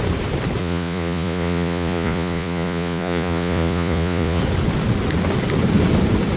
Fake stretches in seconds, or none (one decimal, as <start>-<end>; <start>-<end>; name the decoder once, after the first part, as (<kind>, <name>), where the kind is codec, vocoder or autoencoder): 0.6-4.4 (vocoder, Vocos)

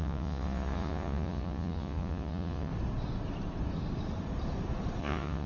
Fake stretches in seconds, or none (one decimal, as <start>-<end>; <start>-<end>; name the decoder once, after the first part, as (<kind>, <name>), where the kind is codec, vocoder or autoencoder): 0.0-2.7 (vocoder, Vocos); 5.0-5.5

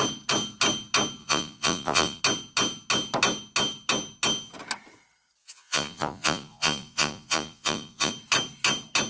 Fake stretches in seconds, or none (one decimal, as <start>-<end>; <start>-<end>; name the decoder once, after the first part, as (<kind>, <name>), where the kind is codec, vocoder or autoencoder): 1.2-2.2 (vocoder, Vocos); 5.4-8.1

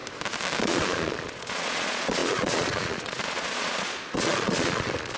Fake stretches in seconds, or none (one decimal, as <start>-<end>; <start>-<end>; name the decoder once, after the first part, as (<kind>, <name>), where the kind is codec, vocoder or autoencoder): 0.6-5.2 (vocoder, Vocos)

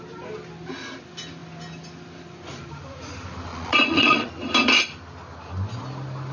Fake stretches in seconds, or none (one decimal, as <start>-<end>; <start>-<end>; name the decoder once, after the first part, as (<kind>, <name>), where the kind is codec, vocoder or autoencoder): 3.5-4.3 (vocoder, Vocos)

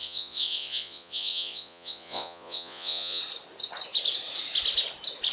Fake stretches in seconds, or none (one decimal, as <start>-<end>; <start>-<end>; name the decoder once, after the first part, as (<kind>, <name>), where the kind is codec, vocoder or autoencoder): 0.0-3.2 (vocoder, Vocos)